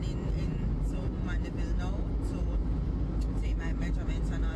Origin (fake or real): real